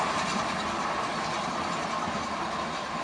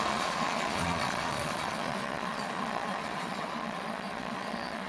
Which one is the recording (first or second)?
first